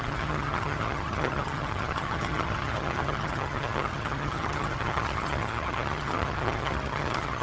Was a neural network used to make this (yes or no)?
yes